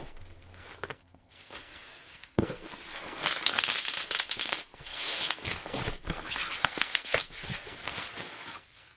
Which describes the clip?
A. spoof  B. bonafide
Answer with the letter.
A